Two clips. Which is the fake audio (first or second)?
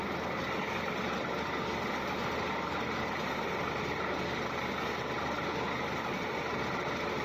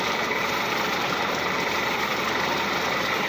second